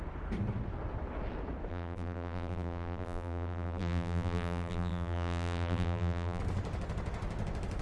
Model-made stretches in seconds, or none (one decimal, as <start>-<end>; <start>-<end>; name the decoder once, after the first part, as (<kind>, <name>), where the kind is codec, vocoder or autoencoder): 1.7-6.4 (vocoder, BigVGAN v2)